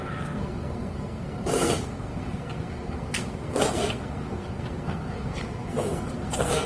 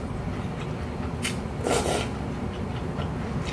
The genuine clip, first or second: second